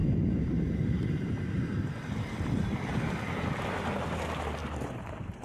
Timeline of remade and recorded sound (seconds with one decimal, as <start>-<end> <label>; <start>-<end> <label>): 0.0-3.2 remade; 3.2-4.6 recorded; 4.6-5.4 remade